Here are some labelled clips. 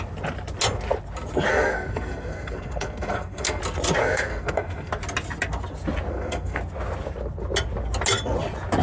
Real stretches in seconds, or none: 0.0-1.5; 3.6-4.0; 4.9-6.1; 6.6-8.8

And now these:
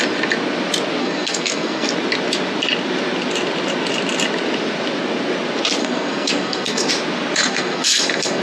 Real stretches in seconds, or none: 0.0-1.0; 1.9-5.8; 6.9-7.4

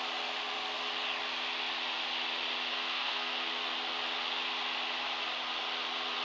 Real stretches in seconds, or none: 0.0-2.7; 3.5-6.2

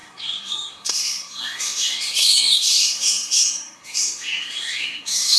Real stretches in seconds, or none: none

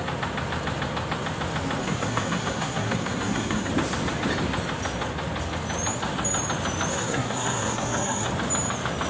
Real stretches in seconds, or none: 0.0-1.8; 3.7-6.9; 8.3-9.1